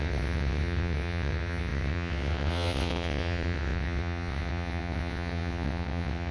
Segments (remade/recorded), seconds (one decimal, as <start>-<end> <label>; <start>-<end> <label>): 0.0-6.3 remade